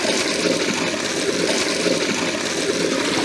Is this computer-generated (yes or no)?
no